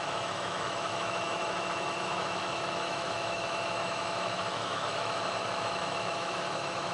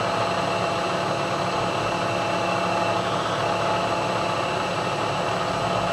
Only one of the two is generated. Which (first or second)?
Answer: first